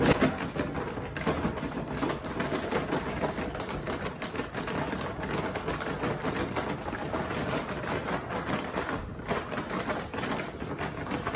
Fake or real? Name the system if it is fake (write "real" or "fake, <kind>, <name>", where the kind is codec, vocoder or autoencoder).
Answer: real